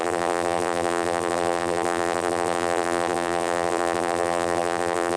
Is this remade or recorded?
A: remade